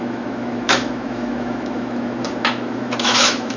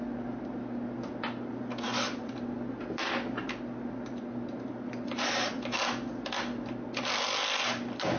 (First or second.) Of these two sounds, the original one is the second